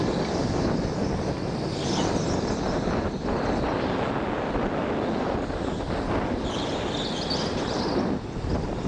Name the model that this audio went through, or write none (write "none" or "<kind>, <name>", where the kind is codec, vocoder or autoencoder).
none